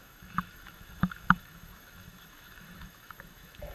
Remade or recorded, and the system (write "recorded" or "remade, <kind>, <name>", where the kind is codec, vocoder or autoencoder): remade, autoencoder, DAC-VAE